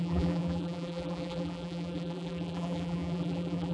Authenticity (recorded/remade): remade